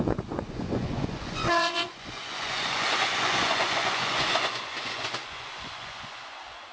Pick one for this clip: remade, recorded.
remade